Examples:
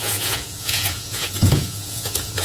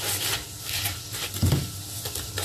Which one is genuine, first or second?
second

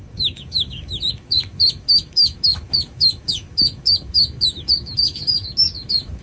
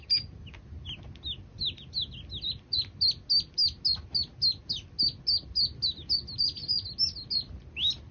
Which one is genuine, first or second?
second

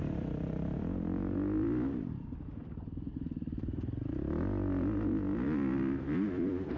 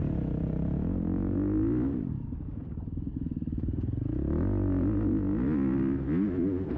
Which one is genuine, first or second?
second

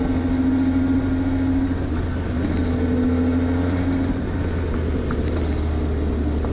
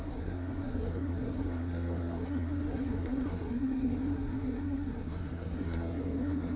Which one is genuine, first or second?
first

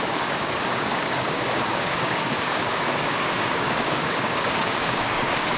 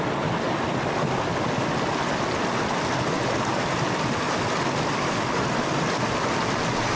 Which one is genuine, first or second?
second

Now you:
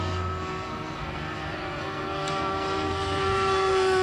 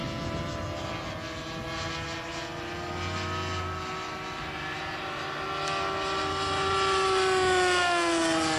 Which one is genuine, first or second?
second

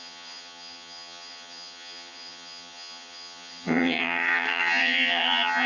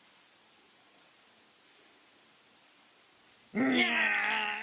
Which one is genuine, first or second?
second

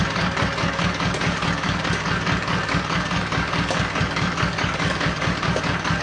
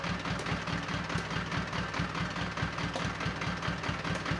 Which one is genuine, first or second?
second